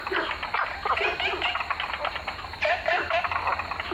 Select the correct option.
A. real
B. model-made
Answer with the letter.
A